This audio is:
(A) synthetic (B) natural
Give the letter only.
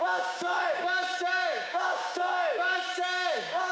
A